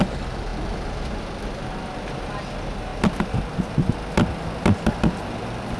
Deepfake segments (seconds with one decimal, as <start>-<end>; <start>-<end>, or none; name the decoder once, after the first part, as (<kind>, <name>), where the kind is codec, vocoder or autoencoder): none